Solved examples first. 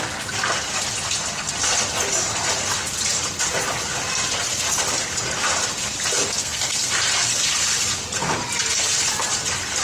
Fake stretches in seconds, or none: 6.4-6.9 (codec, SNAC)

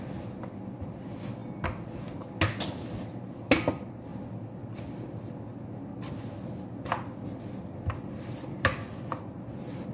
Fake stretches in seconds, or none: 8.8-9.4 (vocoder, Vocos)

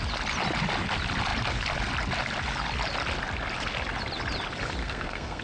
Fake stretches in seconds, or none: 4.8-5.4 (codec, SNAC)